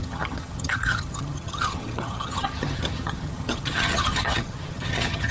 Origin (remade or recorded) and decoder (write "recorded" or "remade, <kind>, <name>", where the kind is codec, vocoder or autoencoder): remade, vocoder, HiFi-GAN